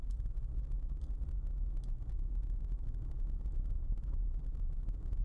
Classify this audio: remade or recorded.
recorded